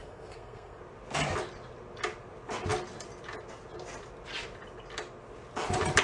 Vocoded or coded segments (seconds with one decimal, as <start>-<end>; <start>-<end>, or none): 0.0-0.8